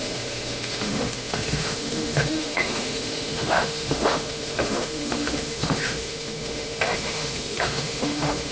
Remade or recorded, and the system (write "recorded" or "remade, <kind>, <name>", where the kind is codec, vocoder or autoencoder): remade, autoencoder, DAC-VAE